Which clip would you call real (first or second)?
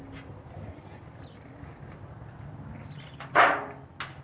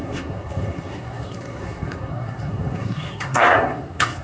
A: first